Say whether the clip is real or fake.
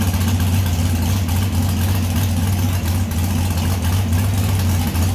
real